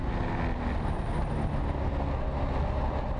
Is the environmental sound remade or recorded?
recorded